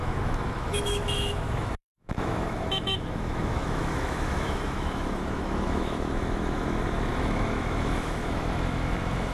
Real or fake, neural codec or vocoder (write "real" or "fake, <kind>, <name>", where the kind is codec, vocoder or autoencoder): fake, autoencoder, DAC-VAE